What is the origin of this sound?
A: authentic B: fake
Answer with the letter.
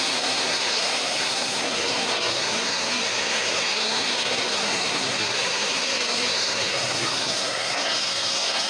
B